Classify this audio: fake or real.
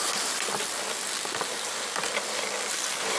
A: fake